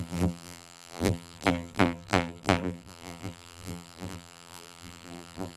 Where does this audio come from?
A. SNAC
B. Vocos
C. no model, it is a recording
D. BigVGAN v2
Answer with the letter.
D